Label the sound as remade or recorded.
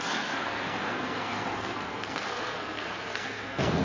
remade